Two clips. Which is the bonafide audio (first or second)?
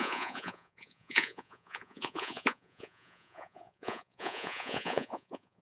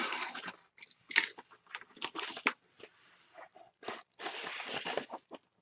second